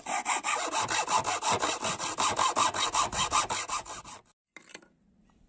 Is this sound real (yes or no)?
yes